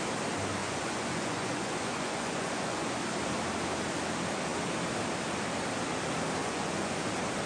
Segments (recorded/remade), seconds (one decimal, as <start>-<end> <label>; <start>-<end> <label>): 0.0-0.6 recorded; 0.6-3.0 remade; 3.0-6.4 recorded; 6.4-7.0 remade; 7.0-7.5 recorded